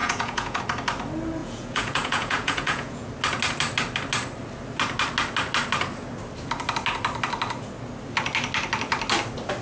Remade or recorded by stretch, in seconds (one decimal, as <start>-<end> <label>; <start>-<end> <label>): 0.0-0.6 remade; 0.6-1.4 recorded; 1.4-3.1 remade; 3.1-9.6 recorded